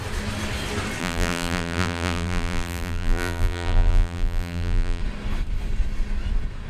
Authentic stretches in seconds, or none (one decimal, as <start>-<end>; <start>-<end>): 0.0-1.0; 5.0-6.7

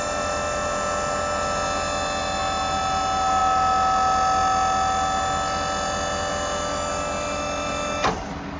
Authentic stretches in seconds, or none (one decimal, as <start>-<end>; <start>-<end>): 0.0-8.6